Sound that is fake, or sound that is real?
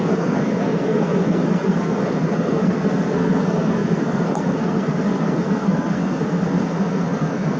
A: fake